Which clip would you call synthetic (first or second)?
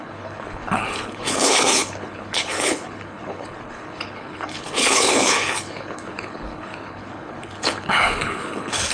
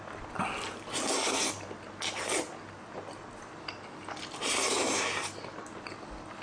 first